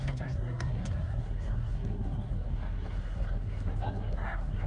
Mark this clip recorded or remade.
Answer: remade